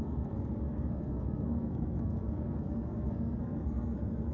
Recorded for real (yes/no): no